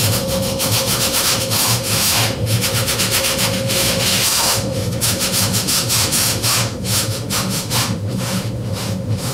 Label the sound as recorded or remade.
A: remade